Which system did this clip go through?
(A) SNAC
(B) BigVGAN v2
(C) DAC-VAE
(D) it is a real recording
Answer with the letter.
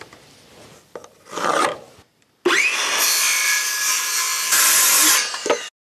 D